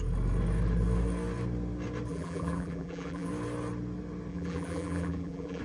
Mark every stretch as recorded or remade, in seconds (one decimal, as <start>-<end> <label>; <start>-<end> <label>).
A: 0.0-2.1 recorded; 2.1-3.3 remade; 3.3-4.3 recorded; 4.3-5.6 remade